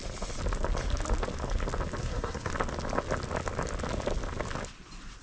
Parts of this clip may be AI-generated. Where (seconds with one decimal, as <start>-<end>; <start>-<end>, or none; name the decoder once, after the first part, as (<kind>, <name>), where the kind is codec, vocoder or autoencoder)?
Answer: 2.0-2.5 (codec, SNAC)